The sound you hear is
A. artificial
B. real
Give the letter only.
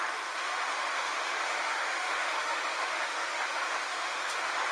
A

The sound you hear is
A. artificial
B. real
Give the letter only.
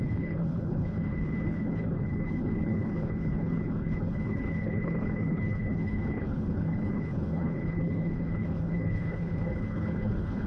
A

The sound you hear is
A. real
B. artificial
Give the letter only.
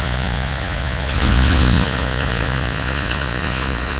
B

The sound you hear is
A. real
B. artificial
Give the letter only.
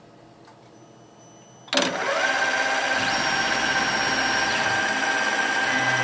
A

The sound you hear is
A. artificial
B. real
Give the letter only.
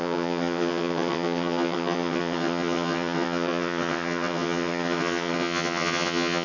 A